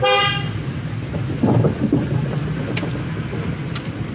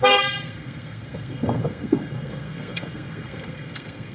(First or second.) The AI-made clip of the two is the second